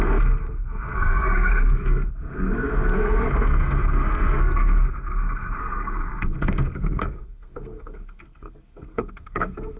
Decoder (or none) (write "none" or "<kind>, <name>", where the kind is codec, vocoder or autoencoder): codec, SNAC